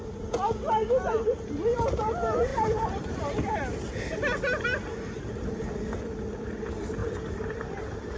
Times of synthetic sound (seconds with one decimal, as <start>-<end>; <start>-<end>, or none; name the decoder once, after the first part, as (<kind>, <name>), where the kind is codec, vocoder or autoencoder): 2.5-3.2 (vocoder, BigVGAN v2); 7.0-8.2